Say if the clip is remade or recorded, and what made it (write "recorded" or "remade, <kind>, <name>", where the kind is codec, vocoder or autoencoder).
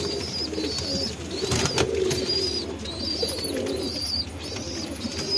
recorded